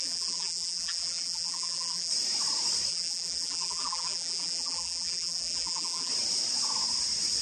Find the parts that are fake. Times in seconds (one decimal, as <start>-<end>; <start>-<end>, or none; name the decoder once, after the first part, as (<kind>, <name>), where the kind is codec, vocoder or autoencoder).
0.0-2.1 (vocoder, BigVGAN v2); 2.9-6.1